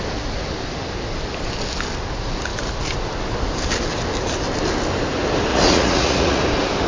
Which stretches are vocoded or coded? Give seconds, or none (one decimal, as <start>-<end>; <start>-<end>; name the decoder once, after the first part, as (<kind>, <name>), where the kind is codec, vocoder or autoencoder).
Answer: 5.5-6.4 (vocoder, Vocos)